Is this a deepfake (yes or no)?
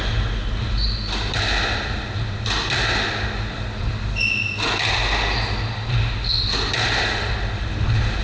no